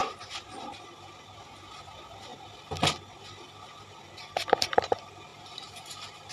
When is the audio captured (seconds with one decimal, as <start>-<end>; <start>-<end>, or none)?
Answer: 1.7-5.3